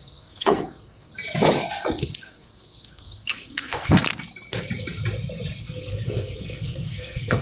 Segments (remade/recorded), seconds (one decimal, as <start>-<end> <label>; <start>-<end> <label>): 0.0-1.1 remade; 1.1-2.2 recorded; 2.2-4.0 remade; 4.0-5.6 recorded; 5.6-7.4 remade